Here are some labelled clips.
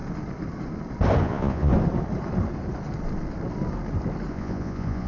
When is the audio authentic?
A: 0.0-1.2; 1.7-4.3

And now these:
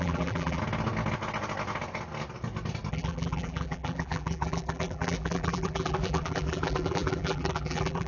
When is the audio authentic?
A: 0.6-2.9

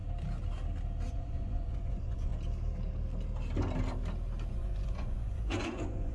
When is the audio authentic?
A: 0.0-1.1; 2.3-4.5

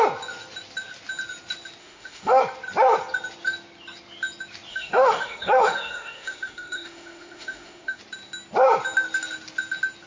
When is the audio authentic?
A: 0.0-1.8; 2.4-4.7; 8.0-10.1